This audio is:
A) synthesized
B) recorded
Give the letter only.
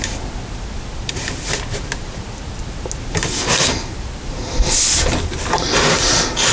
B